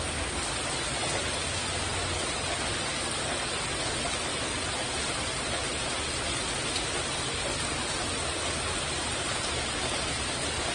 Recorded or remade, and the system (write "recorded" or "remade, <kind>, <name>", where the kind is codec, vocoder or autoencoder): recorded